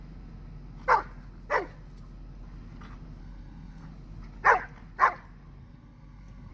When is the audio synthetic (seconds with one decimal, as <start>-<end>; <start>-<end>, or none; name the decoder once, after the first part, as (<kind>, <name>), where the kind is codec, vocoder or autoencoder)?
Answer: 3.2-3.9 (codec, SNAC); 5.6-6.5